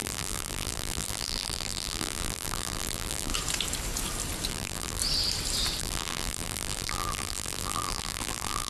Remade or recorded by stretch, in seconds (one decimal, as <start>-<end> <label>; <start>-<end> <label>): 0.0-3.3 remade; 3.3-4.5 recorded; 4.5-5.0 remade; 5.0-5.8 recorded; 5.8-8.7 remade